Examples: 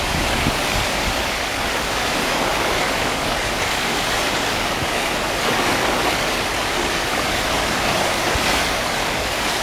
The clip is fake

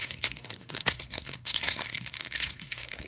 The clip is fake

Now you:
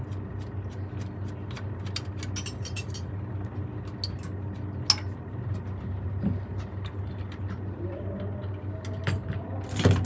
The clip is real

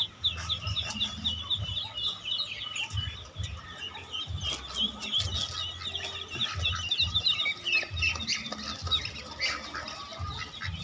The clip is real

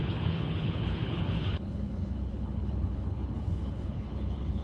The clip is fake